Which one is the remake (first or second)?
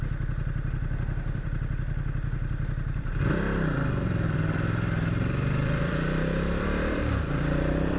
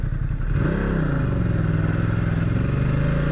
first